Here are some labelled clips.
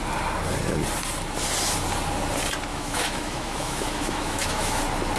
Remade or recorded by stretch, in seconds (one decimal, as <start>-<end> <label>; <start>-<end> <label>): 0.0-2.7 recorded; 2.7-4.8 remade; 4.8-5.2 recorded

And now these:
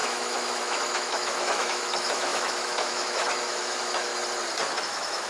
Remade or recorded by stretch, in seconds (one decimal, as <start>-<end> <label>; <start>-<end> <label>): 0.0-4.1 remade; 4.1-4.8 recorded; 4.8-5.3 remade

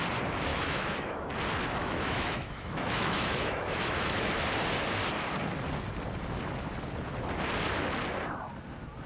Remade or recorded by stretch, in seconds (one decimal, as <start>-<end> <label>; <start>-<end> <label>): 0.0-0.5 recorded; 0.5-1.3 remade; 1.3-1.8 recorded; 1.8-4.3 remade; 4.3-9.1 recorded

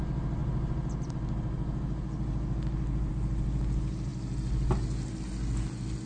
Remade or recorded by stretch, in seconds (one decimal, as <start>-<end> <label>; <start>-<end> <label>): 0.0-6.1 recorded